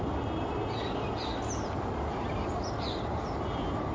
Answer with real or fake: real